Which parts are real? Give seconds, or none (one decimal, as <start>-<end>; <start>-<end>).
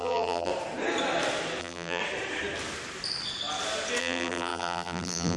0.5-1.6; 2.0-4.0